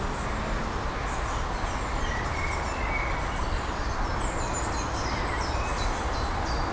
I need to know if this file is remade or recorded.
recorded